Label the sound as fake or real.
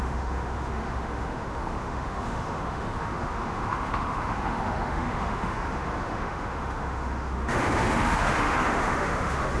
fake